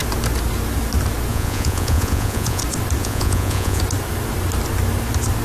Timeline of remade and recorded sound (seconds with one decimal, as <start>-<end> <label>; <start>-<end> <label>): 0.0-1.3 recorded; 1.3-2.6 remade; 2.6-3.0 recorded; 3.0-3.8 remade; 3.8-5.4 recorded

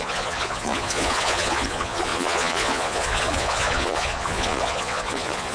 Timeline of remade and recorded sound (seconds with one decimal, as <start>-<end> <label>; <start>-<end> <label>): 0.0-5.5 remade

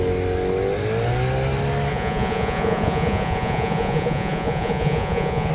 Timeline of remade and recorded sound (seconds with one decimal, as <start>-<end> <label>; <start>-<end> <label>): 0.0-1.9 recorded; 1.9-5.5 remade

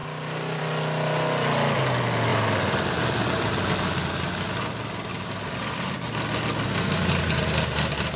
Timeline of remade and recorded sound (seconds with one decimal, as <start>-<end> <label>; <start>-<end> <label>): 0.0-8.2 recorded

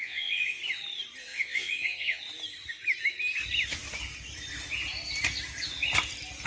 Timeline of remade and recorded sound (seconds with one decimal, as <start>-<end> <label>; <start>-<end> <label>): 0.0-0.6 remade; 0.6-1.3 recorded; 1.3-2.2 remade; 2.2-6.5 recorded